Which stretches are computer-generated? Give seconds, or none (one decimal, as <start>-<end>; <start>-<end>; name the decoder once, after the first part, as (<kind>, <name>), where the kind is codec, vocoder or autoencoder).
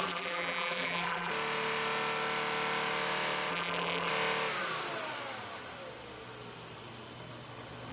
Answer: 0.0-1.3 (vocoder, BigVGAN v2); 3.5-4.1